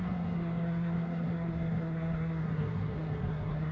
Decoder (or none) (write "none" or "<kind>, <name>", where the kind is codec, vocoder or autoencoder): codec, SNAC